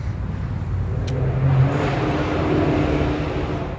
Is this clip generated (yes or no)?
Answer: no